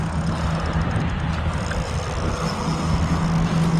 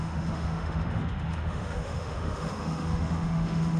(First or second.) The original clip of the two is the first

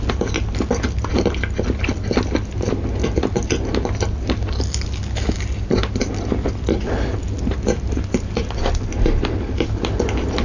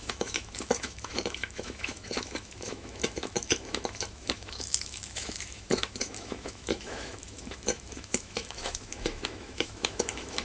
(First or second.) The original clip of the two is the first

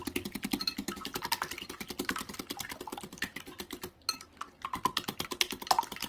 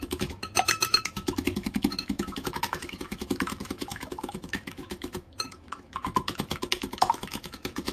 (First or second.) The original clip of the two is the first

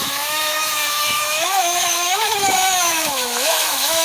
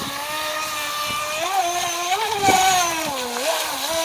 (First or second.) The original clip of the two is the second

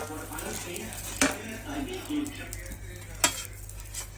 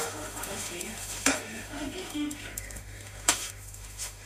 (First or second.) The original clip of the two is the first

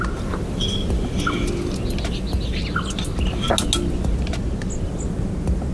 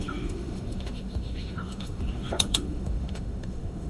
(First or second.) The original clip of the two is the first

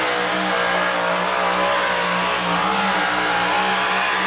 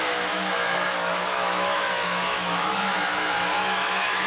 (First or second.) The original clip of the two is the first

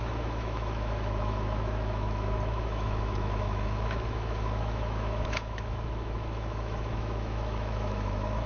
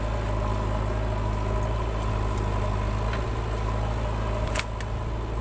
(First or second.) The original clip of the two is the second